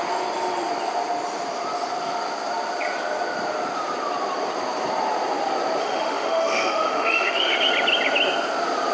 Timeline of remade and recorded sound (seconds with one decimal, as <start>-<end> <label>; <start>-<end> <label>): 0.0-5.8 recorded; 5.8-7.7 remade; 7.7-8.9 recorded